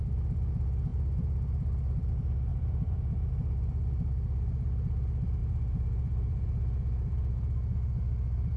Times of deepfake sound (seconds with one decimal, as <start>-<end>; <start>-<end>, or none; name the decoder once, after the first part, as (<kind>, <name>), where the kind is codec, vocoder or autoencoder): 2.5-3.3 (vocoder, Vocos); 5.4-8.0